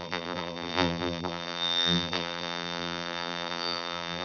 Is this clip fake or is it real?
fake